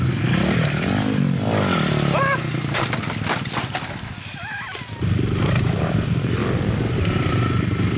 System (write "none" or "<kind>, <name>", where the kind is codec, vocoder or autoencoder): vocoder, BigVGAN v2